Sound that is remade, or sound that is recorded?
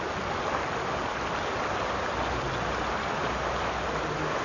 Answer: recorded